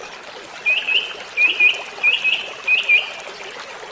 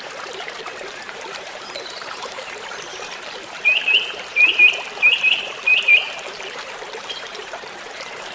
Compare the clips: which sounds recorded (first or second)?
first